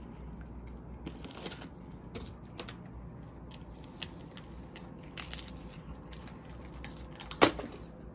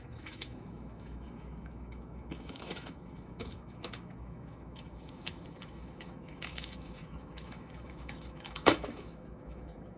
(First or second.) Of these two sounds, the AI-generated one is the second